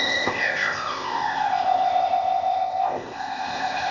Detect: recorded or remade remade